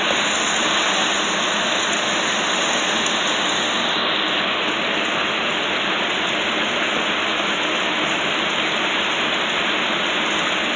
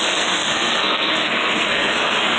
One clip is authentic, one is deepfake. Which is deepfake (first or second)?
second